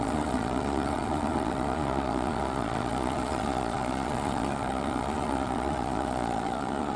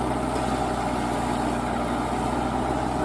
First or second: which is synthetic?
first